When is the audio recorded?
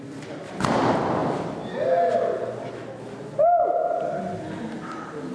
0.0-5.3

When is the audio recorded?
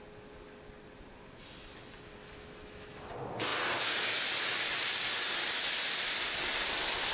0.0-2.2; 3.1-7.1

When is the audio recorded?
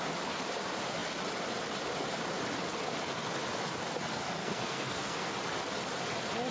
0.0-4.4; 5.3-6.5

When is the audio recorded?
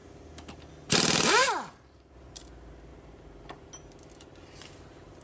0.0-1.4; 2.4-2.9; 3.7-5.2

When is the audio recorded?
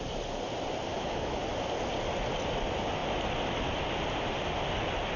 0.0-0.9; 1.4-5.2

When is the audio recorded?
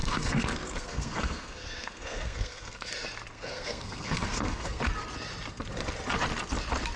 2.9-3.3; 4.8-7.0